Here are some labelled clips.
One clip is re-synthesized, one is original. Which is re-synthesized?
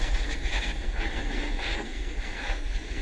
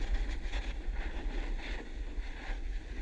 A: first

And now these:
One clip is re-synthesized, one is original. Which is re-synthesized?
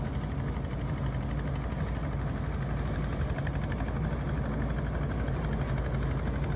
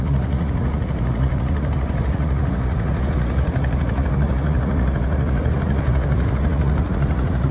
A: second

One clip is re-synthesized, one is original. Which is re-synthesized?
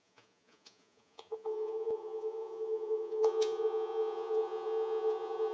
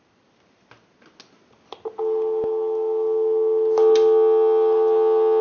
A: first